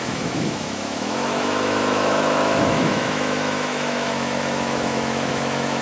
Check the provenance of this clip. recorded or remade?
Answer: remade